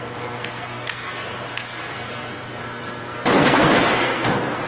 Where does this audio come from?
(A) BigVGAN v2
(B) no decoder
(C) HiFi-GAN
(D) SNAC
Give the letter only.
D